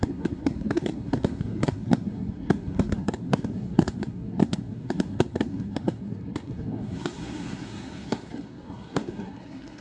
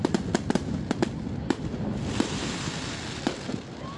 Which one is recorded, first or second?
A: second